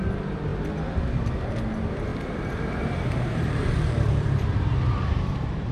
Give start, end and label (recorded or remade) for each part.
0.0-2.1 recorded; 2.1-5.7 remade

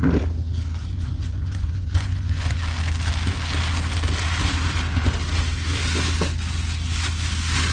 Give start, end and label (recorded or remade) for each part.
0.0-0.8 recorded; 0.8-2.6 remade; 2.6-7.7 recorded

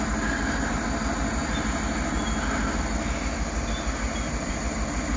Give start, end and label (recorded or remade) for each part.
0.0-5.2 recorded

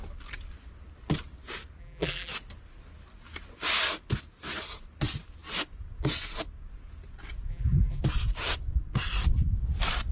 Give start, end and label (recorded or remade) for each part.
0.0-1.8 recorded; 1.8-2.3 remade; 2.3-7.5 recorded; 7.5-8.0 remade; 8.0-10.1 recorded

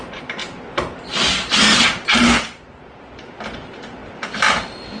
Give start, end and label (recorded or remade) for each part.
0.0-0.4 remade; 0.4-2.9 recorded; 2.9-5.0 remade

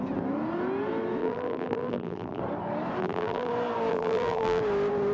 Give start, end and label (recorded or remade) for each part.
0.0-1.2 recorded; 1.2-2.4 remade; 2.4-3.0 recorded; 3.0-3.5 remade; 3.5-3.9 recorded; 3.9-4.6 remade; 4.6-5.1 recorded

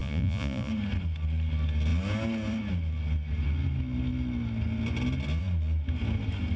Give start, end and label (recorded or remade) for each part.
0.0-0.7 remade; 0.7-6.6 recorded

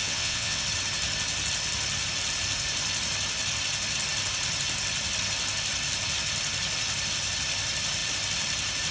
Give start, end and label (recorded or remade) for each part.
0.0-0.6 remade; 0.6-8.9 recorded